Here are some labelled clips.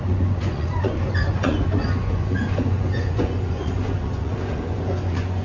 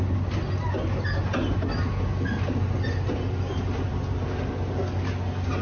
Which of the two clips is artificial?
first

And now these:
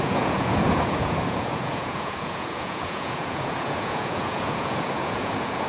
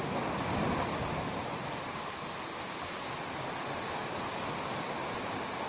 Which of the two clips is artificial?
first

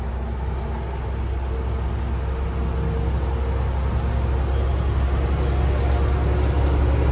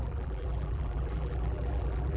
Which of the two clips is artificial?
second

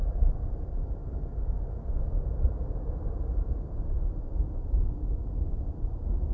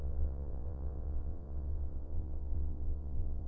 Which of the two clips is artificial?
second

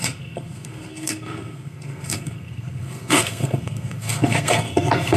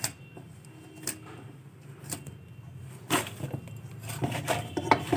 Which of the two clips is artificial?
first